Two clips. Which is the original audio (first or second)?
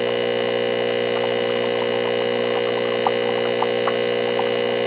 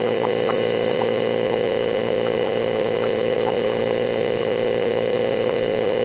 first